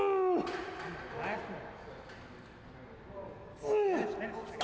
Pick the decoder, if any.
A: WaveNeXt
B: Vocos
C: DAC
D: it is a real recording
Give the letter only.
D